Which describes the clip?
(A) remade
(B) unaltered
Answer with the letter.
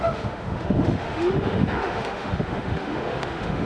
A